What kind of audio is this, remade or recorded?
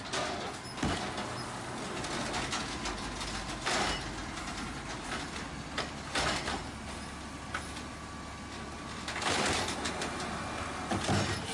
recorded